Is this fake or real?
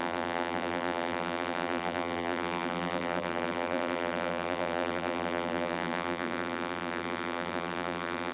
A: fake